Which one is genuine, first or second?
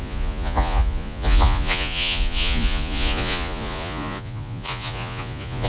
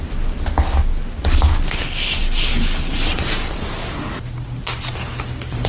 second